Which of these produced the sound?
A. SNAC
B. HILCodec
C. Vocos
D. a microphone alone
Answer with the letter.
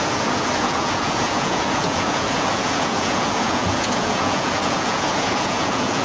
C